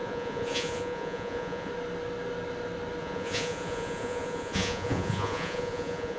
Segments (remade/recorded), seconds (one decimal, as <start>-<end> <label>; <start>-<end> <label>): 0.0-1.7 remade; 1.7-3.0 recorded; 3.0-6.2 remade